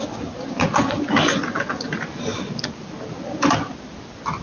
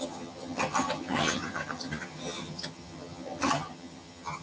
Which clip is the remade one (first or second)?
second